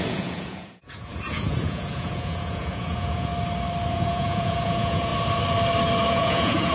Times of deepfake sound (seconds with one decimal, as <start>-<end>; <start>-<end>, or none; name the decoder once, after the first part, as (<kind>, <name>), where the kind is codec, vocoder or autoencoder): 0.0-3.3 (vocoder, Vocos); 3.9-5.1; 6.1-6.7